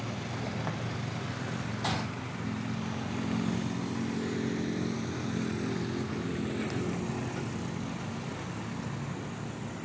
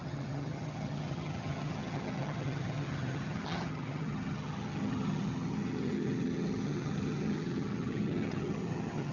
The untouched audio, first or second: first